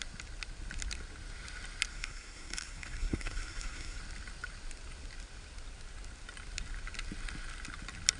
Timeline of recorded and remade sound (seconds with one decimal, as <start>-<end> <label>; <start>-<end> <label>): 0.0-1.9 recorded; 1.9-4.0 remade; 4.0-8.2 recorded